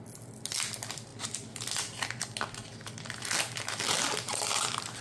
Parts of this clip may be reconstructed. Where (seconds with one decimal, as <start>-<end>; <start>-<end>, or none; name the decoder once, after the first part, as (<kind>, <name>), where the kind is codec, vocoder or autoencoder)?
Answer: none